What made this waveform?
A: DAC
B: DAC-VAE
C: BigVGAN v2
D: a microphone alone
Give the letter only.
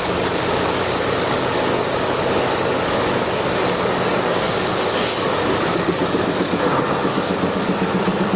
A